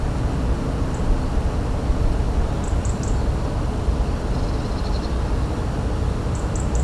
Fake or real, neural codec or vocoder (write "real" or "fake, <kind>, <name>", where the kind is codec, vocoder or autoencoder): real